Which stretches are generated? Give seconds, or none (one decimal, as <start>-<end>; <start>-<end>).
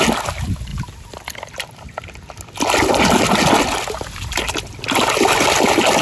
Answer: none